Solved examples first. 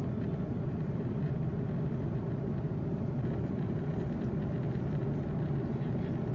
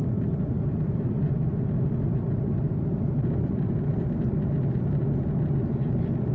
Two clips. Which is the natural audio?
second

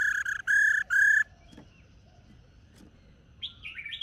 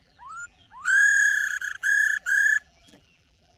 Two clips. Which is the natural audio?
first